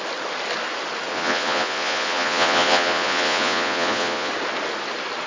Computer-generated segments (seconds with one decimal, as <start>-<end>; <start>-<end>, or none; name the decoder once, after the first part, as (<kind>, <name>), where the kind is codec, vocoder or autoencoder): 1.1-4.3 (vocoder, Vocos)